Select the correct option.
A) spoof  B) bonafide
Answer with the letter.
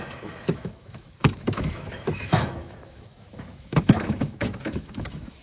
A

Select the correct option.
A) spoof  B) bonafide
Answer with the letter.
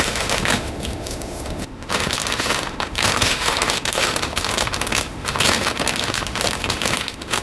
A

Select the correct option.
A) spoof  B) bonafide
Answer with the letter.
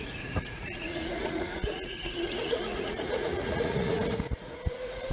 A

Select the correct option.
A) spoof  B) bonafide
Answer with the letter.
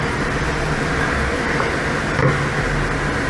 B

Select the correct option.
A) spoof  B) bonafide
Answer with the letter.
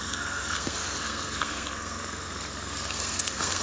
A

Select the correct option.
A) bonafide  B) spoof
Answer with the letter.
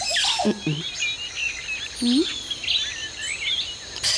A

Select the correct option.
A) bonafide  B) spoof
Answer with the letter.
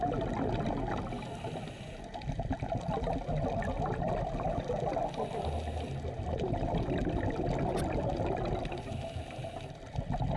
A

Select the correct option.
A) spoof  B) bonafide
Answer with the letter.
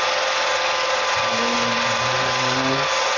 B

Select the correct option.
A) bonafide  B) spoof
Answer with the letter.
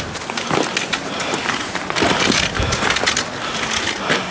A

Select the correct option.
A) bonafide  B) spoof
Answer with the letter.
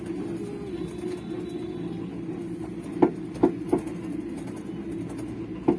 A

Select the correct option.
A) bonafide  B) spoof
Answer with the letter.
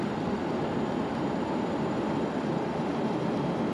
B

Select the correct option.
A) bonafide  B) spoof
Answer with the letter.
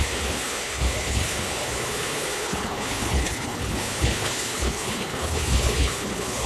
B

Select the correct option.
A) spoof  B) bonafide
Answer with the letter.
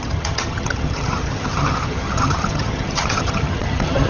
A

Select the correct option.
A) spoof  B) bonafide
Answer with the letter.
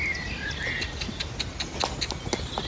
B